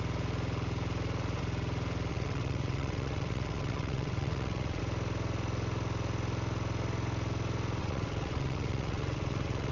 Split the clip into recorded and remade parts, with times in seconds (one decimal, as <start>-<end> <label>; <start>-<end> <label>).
0.0-2.1 recorded; 2.1-4.8 remade; 4.8-7.8 recorded; 7.8-9.7 remade